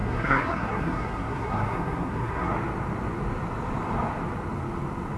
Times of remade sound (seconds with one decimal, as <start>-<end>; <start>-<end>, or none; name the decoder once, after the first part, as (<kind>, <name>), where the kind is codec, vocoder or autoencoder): 0.0-2.5 (codec, SNAC)